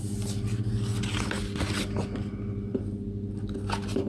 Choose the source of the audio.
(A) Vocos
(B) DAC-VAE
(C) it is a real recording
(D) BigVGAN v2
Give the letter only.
C